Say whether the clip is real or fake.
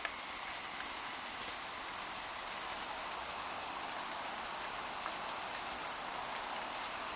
real